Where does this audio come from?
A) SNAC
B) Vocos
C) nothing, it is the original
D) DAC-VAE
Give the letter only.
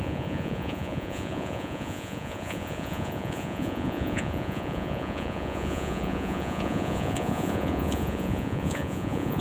B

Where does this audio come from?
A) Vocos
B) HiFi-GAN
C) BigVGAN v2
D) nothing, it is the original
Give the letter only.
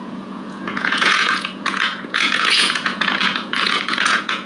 A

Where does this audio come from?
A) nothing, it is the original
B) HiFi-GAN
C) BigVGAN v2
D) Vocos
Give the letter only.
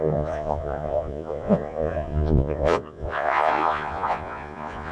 D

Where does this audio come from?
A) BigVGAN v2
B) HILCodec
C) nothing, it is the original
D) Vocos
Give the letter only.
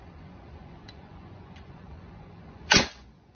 D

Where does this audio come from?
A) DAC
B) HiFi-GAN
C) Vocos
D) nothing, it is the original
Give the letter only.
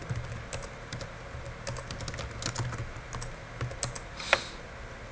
D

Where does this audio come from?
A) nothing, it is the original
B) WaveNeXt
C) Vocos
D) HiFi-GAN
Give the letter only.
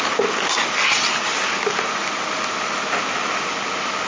A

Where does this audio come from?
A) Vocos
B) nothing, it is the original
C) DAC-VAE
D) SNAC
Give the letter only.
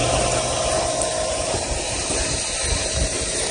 B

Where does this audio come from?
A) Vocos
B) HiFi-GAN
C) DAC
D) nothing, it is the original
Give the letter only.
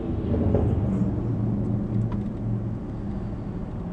D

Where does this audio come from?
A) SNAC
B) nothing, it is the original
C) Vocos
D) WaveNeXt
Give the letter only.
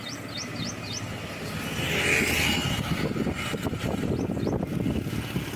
B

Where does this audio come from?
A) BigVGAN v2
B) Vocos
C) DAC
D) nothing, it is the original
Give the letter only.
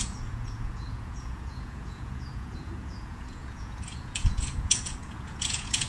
B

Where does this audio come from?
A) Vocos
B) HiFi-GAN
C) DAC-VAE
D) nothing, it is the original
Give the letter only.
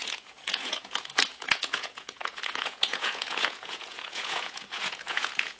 A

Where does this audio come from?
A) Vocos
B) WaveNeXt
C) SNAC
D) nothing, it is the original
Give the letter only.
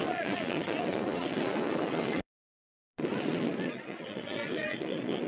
A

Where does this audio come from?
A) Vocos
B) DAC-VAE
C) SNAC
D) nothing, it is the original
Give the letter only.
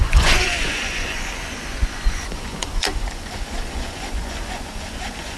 A